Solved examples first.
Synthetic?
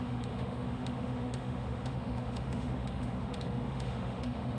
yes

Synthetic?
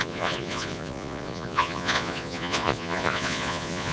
yes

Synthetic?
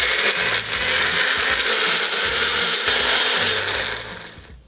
no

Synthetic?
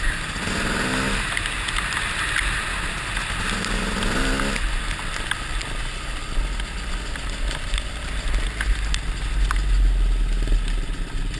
no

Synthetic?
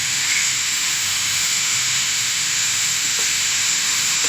yes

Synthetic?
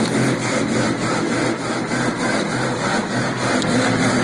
no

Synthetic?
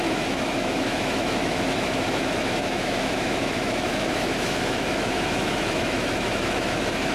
yes